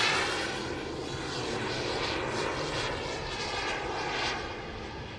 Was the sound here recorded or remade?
recorded